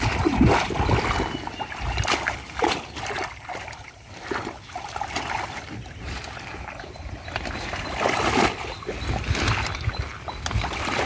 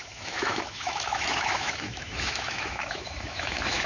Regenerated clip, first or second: second